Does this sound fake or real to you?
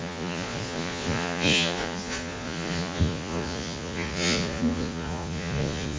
fake